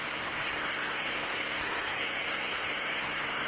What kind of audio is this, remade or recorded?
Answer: remade